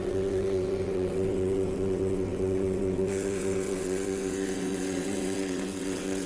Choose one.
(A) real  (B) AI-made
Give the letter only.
B